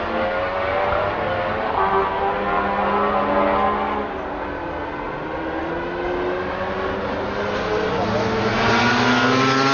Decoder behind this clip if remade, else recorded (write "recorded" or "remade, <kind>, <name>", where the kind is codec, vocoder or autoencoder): recorded